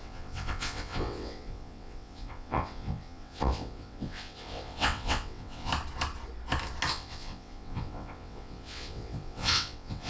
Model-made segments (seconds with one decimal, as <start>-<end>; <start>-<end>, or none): 0.0-5.7; 6.9-10.1